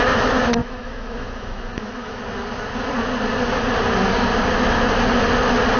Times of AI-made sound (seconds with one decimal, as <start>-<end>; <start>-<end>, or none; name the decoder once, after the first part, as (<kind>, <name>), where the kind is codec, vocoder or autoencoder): 0.6-2.2 (autoencoder, DAC-VAE)